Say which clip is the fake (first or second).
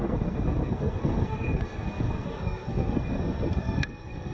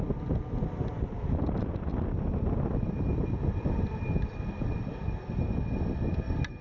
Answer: first